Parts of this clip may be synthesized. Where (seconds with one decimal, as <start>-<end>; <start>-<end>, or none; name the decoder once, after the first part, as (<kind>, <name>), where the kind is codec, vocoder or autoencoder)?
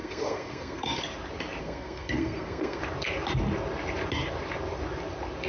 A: 0.0-1.0 (codec, SNAC); 1.6-2.8